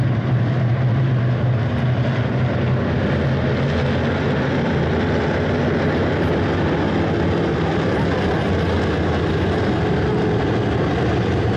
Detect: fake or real real